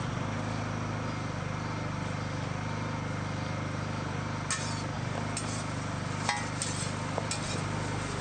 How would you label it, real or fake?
real